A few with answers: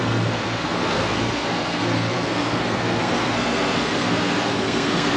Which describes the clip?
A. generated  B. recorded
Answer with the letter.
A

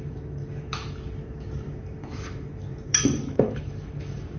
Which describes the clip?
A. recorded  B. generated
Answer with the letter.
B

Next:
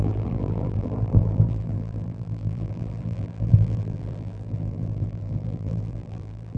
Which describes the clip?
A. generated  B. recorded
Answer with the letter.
A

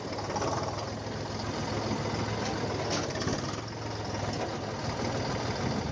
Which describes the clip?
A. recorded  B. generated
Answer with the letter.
A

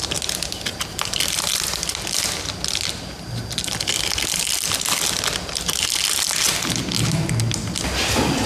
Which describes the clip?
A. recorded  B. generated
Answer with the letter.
A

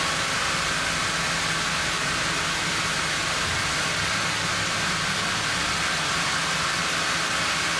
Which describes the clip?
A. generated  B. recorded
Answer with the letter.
B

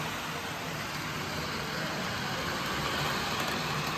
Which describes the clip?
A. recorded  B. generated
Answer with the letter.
A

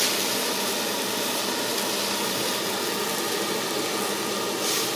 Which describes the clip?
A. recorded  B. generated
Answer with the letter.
A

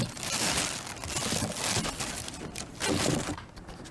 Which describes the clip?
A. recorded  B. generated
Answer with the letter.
A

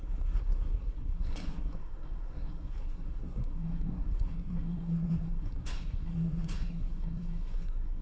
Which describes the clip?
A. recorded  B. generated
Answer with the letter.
B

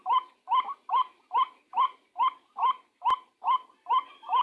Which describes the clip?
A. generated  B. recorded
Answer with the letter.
B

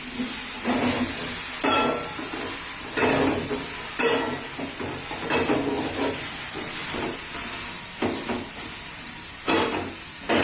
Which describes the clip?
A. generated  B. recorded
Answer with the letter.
B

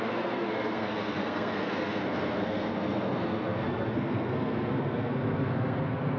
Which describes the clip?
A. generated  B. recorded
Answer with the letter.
A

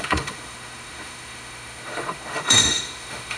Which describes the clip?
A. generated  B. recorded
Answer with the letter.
A